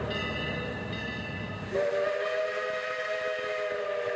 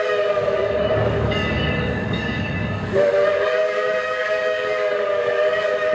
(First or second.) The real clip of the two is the first